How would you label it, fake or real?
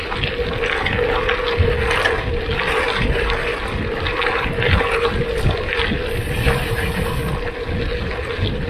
real